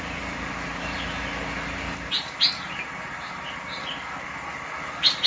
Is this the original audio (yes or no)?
yes